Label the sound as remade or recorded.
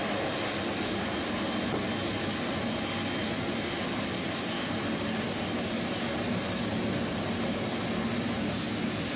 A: recorded